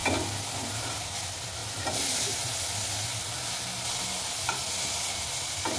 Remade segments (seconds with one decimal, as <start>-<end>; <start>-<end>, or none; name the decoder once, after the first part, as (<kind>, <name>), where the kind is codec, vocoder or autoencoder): none